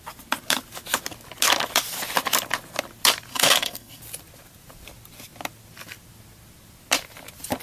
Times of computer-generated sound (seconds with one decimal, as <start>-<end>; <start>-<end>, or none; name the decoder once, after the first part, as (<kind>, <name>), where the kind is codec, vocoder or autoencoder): 3.3-4.0 (codec, SNAC)